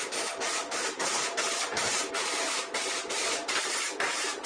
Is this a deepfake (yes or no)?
yes